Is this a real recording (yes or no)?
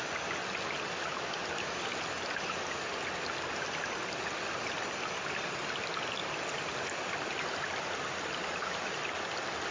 yes